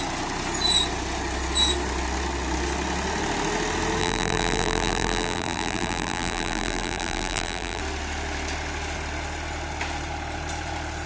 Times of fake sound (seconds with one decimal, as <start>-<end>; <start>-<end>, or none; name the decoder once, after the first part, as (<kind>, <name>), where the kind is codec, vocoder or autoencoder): 4.0-7.8 (vocoder, BigVGAN v2)